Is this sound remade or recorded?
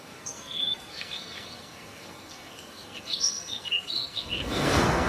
remade